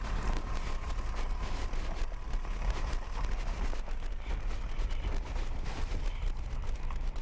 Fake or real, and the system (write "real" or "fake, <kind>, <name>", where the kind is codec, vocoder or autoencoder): real